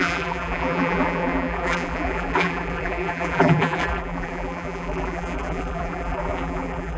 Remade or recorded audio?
remade